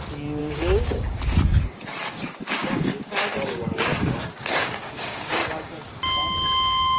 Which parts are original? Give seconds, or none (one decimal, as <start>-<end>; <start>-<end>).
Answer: 0.0-0.4; 1.2-2.6